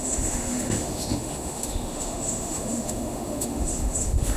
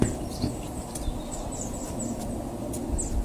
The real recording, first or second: second